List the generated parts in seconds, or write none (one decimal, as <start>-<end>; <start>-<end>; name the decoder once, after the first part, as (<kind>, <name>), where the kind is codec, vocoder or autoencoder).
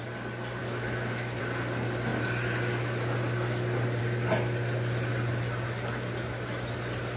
0.6-1.4 (autoencoder, DAC-VAE)